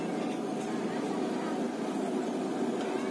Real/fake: real